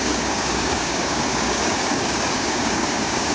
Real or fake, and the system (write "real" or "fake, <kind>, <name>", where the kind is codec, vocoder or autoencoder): fake, codec, DAC